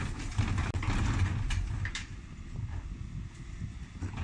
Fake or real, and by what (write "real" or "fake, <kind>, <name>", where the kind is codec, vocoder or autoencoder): real